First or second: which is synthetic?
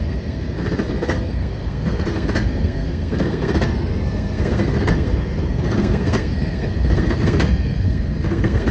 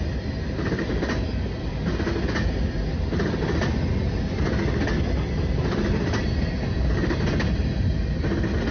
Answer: first